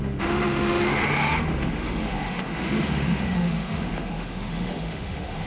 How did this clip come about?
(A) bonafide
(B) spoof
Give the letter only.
B